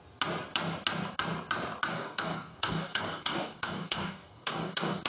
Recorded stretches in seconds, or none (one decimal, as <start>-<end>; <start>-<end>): 0.0-1.9